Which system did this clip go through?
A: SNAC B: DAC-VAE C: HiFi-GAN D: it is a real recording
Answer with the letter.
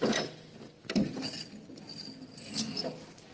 D